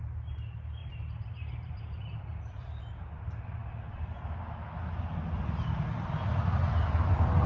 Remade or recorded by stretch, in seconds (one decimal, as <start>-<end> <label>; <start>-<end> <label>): 0.0-0.8 recorded; 0.8-2.8 remade; 2.8-3.6 recorded; 3.6-4.6 remade; 4.6-7.5 recorded

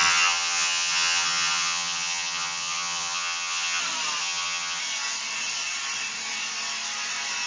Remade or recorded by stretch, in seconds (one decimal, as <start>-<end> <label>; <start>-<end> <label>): 0.0-3.8 remade; 3.8-4.2 recorded; 4.2-4.8 remade; 4.8-7.5 recorded

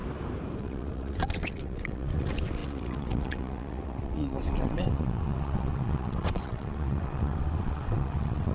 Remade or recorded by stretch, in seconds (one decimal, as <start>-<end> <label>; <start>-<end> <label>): 0.0-0.6 recorded; 0.6-8.5 remade

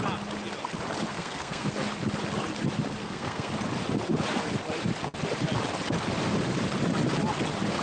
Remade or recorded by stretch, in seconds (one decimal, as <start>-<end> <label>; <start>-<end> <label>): 0.0-1.1 recorded; 1.1-1.7 remade; 1.7-3.0 recorded; 3.0-3.5 remade; 3.5-7.8 recorded

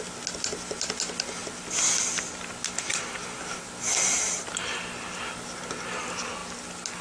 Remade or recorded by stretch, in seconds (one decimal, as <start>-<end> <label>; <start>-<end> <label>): 0.0-2.9 recorded; 2.9-4.5 remade; 4.5-7.0 recorded

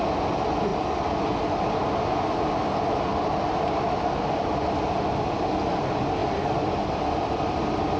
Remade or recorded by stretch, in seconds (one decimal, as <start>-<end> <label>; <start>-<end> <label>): 0.0-8.0 recorded